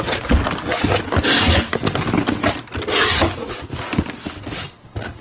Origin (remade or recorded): recorded